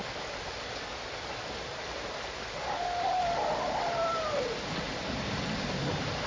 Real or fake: real